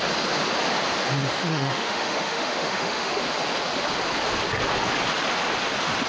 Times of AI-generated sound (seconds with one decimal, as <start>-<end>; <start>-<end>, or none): 1.5-3.2